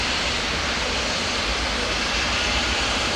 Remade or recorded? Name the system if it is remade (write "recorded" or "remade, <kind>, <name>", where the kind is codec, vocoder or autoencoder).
remade, vocoder, BigVGAN v2